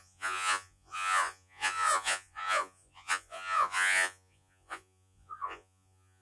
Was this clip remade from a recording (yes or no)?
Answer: yes